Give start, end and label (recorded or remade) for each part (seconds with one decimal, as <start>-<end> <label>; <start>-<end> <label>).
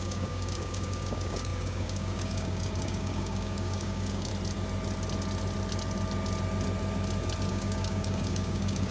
0.0-4.3 remade; 4.3-7.5 recorded; 7.5-8.9 remade